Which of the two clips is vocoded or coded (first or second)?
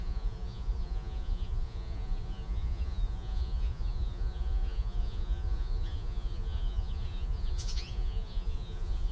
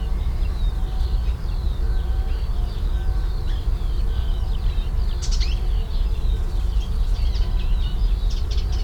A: first